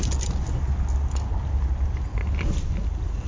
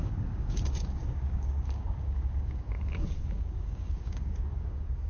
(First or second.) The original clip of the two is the first